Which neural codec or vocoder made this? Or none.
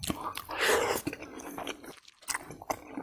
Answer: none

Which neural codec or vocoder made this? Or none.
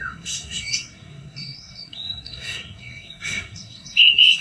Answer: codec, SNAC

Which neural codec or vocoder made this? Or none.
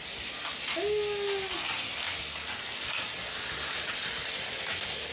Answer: none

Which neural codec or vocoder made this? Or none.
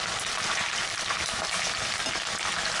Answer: none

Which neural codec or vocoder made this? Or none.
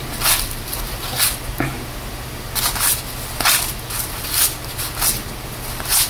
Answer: none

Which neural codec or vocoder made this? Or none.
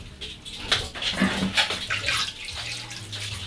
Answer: none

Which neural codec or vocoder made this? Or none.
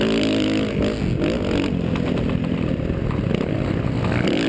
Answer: none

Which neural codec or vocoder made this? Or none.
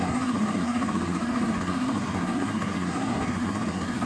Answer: codec, SNAC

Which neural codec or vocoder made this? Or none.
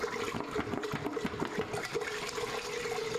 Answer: none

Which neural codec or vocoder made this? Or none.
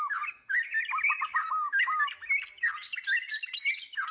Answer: none